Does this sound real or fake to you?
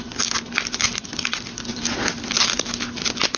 real